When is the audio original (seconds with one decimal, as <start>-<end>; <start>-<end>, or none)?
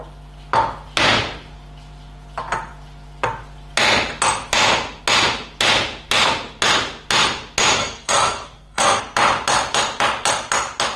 0.0-7.8; 9.0-11.0